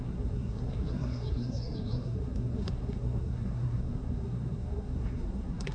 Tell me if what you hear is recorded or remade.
remade